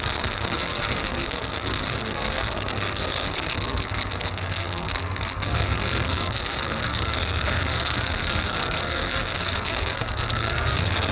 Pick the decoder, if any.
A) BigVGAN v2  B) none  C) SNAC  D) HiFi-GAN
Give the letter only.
C